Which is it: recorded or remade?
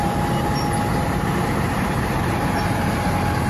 remade